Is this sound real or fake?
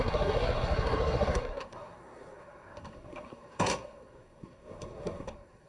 fake